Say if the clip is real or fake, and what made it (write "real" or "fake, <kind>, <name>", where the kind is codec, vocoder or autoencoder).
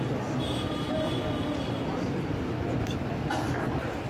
real